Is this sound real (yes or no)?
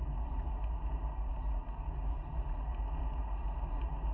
yes